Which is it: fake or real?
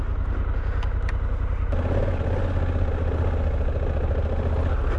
real